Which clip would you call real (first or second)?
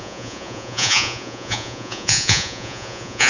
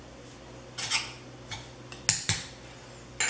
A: second